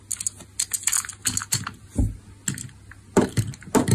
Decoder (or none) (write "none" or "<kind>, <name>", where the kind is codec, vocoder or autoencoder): none